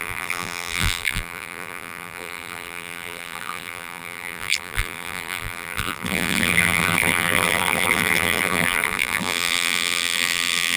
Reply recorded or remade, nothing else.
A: remade